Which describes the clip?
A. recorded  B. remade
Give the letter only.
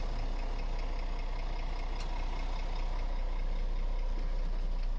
A